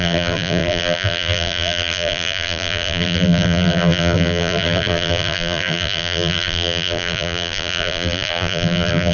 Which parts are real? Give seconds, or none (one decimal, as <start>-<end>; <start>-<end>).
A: none